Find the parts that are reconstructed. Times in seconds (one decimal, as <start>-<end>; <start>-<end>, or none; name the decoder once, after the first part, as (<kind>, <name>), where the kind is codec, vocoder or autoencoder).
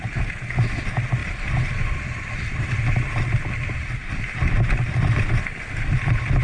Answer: none